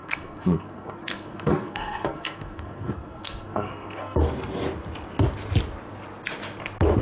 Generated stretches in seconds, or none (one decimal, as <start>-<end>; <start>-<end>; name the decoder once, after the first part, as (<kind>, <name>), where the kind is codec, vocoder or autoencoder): 0.0-4.2 (codec, SNAC)